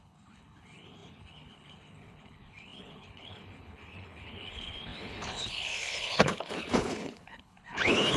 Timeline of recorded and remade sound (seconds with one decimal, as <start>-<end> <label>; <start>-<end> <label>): 0.0-8.2 remade